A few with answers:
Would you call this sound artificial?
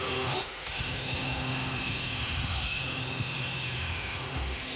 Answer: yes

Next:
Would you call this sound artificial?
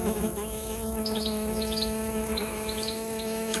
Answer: yes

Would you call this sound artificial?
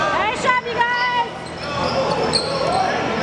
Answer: no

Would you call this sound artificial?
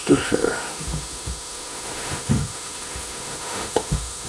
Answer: yes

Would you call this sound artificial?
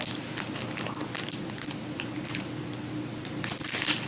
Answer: no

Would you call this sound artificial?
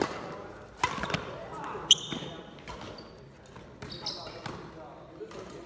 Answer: no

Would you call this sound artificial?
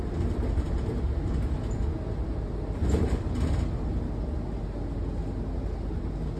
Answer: no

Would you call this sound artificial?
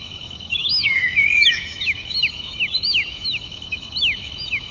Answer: yes